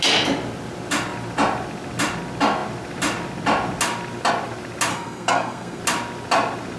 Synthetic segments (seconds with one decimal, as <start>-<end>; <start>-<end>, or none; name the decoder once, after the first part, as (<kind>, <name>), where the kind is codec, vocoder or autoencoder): 4.9-5.8 (codec, SNAC)